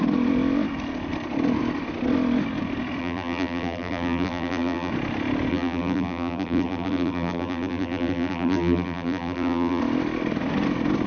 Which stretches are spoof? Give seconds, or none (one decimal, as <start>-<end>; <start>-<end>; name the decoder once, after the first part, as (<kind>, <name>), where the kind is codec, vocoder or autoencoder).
3.0-4.9 (vocoder, BigVGAN v2); 5.5-9.8